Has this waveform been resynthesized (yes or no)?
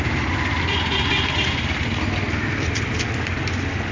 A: yes